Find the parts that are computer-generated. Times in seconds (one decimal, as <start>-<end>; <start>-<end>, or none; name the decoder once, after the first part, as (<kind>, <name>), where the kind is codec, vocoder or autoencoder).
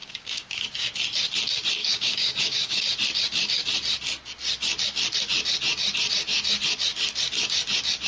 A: 0.0-0.6 (codec, DAC); 1.8-2.8